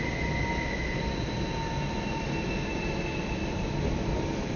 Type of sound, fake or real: real